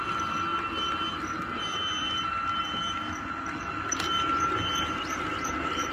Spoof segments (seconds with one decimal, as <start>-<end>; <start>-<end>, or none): none